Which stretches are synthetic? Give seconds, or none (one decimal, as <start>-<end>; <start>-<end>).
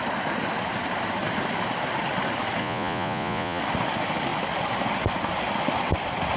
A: 2.6-3.6